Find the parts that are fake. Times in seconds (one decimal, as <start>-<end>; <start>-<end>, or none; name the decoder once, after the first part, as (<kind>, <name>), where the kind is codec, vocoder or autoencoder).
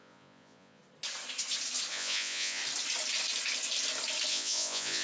0.0-0.8 (vocoder, Vocos); 1.9-2.6; 4.3-5.0